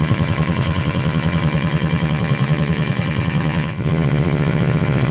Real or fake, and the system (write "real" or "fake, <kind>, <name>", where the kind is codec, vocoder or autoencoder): fake, vocoder, Vocos